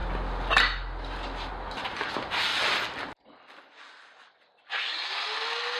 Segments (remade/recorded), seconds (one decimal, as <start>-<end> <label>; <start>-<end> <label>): 0.0-5.8 recorded